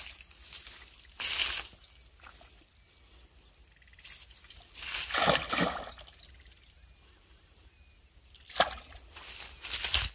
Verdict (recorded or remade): recorded